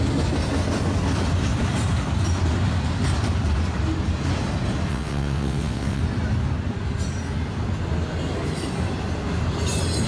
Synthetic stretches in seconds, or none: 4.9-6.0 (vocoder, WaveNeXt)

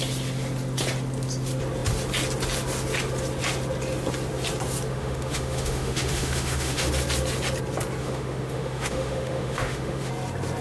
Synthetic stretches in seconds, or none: 4.9-6.9 (autoencoder, DAC-VAE); 8.0-10.1

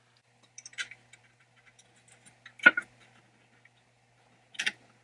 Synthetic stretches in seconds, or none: none

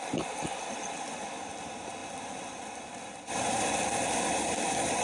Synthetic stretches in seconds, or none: none

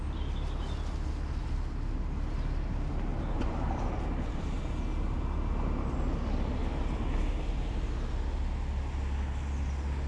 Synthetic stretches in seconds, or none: 3.1-4.6 (vocoder, BigVGAN v2)

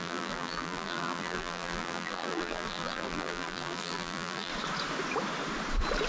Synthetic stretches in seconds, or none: 0.0-4.5 (vocoder, BigVGAN v2)

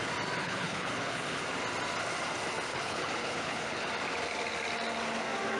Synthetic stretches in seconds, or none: 0.4-1.4 (codec, HILCodec); 2.7-3.9

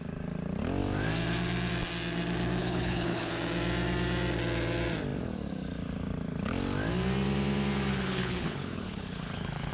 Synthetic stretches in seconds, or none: 2.6-3.3 (codec, HILCodec); 7.9-9.7